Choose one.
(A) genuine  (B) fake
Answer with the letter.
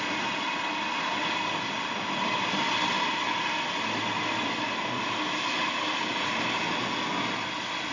A